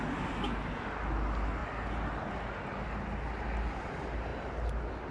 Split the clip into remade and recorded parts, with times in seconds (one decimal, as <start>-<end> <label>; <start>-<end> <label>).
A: 0.0-5.1 recorded